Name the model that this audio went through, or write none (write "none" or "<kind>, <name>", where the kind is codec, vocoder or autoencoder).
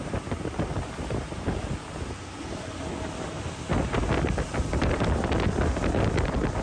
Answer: none